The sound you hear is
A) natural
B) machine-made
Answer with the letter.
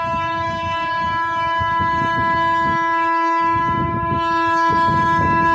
B